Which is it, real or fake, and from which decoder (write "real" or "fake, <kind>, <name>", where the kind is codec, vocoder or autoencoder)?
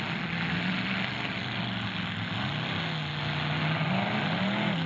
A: real